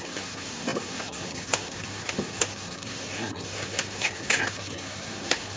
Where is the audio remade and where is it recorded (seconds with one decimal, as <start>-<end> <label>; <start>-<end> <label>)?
0.0-5.6 remade